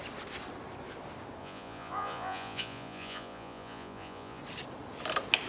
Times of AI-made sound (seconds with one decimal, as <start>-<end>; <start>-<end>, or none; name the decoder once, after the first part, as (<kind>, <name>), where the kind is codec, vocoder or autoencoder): 1.4-4.4 (vocoder, Vocos)